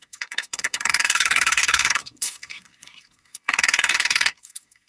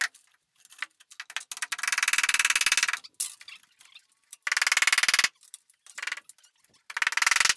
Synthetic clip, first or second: first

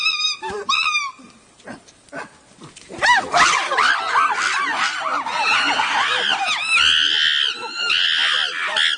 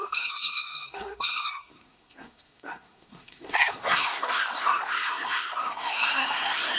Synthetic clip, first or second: second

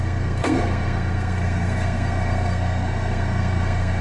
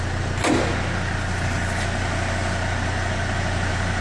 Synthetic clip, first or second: first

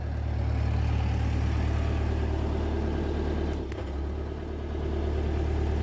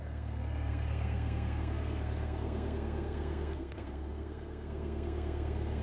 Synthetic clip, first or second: second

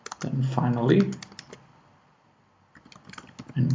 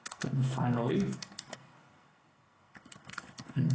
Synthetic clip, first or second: second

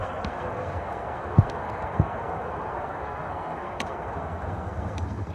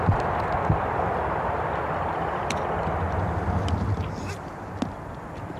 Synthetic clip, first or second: first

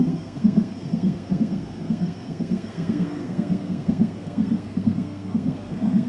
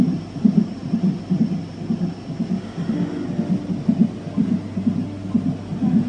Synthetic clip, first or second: first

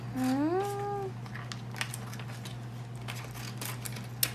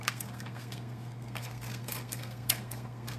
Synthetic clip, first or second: second